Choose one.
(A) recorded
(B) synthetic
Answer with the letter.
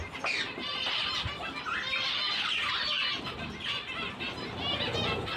A